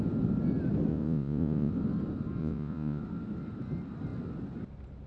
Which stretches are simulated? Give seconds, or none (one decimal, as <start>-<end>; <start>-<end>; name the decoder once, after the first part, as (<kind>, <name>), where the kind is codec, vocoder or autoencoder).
0.9-1.7 (vocoder, Vocos); 2.4-3.0